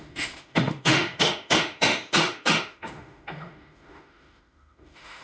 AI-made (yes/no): yes